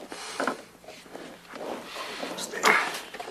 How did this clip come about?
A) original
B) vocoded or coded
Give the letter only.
A